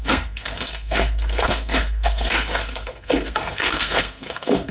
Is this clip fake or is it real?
fake